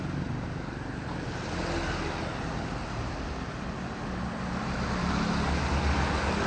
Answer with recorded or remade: recorded